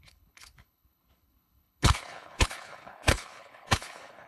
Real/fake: fake